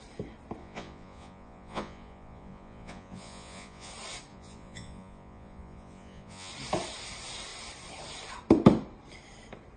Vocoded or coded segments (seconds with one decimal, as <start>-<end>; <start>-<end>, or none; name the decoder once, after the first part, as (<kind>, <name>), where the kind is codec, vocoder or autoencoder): 0.6-3.9 (vocoder, Vocos); 4.3-6.5

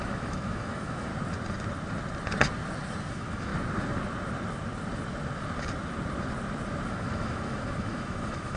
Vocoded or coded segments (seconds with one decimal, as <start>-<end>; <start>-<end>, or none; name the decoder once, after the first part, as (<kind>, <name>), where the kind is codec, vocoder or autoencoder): 0.0-1.1 (autoencoder, DAC-VAE); 3.1-3.5; 6.9-8.6

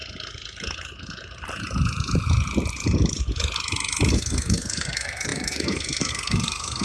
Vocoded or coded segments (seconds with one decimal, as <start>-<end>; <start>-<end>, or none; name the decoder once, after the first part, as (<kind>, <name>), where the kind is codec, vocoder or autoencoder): 4.1-6.8 (codec, SNAC)

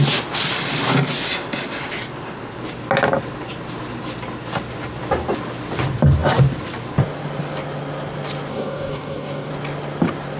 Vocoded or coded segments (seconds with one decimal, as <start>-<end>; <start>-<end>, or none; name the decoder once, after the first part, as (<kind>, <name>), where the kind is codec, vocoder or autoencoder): 8.5-9.5 (codec, DAC)

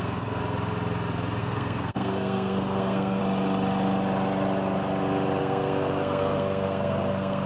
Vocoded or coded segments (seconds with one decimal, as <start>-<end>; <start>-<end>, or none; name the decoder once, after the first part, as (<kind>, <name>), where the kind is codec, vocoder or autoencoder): 0.0-0.4 (codec, SNAC); 1.4-3.2; 5.4-7.5

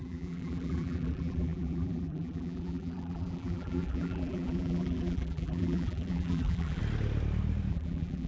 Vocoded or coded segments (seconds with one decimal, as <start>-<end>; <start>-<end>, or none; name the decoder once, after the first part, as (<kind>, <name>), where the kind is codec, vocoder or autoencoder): 0.0-6.8 (vocoder, BigVGAN v2); 7.7-8.3

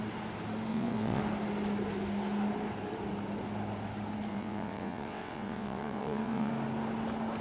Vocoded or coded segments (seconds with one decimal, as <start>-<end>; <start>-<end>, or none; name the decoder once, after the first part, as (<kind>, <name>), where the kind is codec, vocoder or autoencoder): 0.7-1.2 (vocoder, WaveNeXt); 4.3-6.5

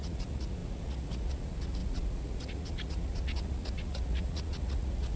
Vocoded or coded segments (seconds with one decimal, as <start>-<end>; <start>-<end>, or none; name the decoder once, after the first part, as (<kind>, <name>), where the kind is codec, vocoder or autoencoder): 0.0-5.2 (vocoder, Vocos)